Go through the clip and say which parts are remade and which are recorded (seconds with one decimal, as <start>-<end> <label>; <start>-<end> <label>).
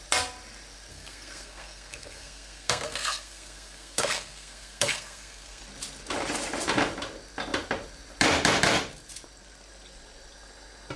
0.0-0.9 recorded; 0.9-5.6 remade; 5.6-11.0 recorded